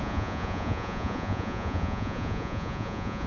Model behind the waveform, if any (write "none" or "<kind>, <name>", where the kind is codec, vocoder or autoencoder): vocoder, Vocos